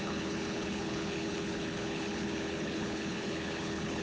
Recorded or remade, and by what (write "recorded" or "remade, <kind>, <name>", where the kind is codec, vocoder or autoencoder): remade, codec, HILCodec